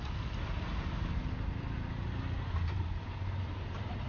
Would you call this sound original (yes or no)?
yes